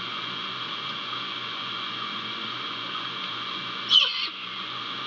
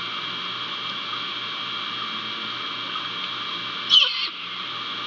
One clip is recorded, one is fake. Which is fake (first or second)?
first